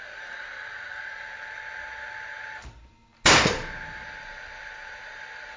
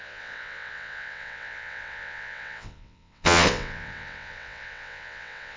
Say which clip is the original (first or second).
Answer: first